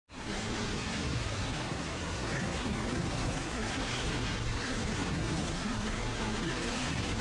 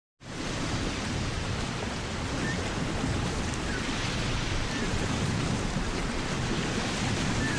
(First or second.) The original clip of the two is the second